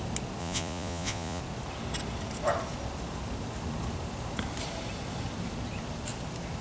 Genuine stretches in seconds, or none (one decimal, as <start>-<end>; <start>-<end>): 0.0-0.4; 1.4-6.6